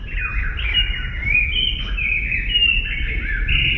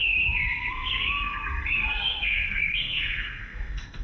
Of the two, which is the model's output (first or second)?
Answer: second